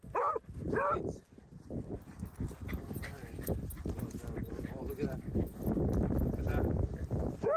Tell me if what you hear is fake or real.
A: fake